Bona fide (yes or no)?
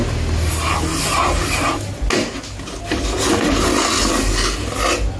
yes